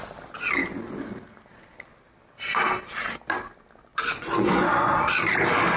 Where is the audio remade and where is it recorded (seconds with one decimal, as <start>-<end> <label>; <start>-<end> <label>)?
0.0-3.9 recorded; 3.9-5.1 remade; 5.1-5.8 recorded